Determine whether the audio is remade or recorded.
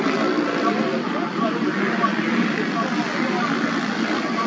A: recorded